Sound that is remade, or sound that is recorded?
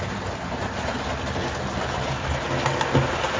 recorded